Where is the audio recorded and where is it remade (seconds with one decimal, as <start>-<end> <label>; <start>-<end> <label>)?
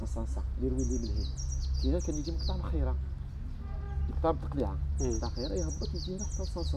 0.0-6.8 recorded